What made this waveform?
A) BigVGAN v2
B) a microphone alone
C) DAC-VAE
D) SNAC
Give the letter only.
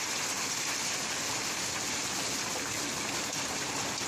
B